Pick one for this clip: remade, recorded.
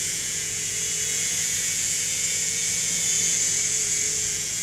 remade